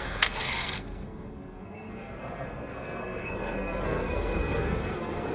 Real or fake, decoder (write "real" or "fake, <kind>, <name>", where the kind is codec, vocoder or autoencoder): fake, codec, SNAC